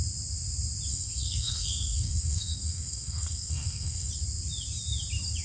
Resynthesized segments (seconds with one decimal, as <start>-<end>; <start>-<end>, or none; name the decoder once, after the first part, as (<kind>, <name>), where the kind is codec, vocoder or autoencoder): 0.9-4.1 (codec, SNAC)